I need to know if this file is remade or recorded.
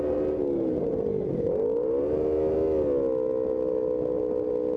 recorded